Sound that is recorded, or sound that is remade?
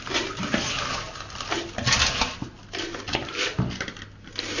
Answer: recorded